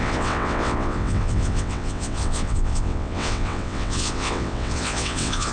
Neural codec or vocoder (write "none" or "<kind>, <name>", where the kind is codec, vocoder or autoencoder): vocoder, WaveNeXt